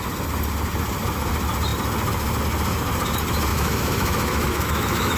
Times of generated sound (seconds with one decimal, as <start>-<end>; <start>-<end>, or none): 3.5-5.2